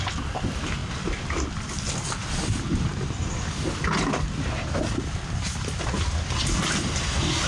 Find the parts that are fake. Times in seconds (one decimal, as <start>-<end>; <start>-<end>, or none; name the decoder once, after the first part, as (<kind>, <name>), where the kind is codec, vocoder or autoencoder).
none